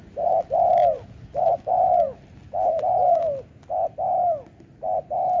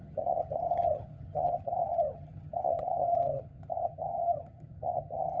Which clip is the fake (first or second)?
second